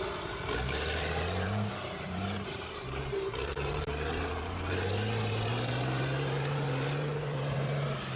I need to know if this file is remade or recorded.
remade